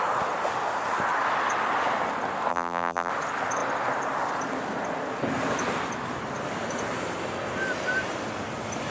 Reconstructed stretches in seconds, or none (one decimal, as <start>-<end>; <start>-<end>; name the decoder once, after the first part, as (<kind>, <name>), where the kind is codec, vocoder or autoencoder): 2.5-3.1 (vocoder, BigVGAN v2)

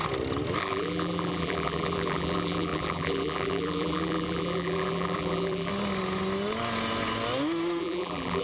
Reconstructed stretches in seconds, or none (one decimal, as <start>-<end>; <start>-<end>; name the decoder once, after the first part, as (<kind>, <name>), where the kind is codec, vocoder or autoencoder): 0.6-5.7 (vocoder, BigVGAN v2); 7.8-8.4